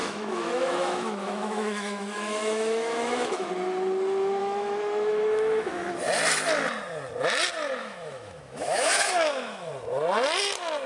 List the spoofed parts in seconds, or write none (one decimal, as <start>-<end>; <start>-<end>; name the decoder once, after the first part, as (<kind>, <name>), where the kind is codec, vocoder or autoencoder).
0.0-3.5 (autoencoder, DAC-VAE); 4.4-5.9; 7.8-9.7